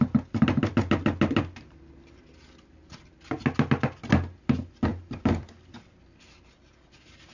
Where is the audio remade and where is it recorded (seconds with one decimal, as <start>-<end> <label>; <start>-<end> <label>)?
0.0-4.9 recorded; 4.9-5.7 remade; 5.7-7.3 recorded